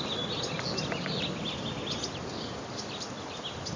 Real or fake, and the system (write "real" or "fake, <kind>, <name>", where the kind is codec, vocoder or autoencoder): real